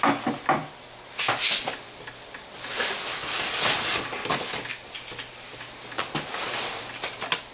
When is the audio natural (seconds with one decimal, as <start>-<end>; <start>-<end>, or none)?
0.0-7.5